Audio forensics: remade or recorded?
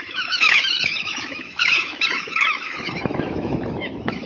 remade